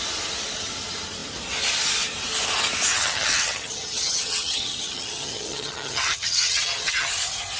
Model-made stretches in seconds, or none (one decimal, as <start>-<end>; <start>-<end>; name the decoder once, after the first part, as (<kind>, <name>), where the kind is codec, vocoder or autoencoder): 2.9-7.1 (vocoder, HiFi-GAN)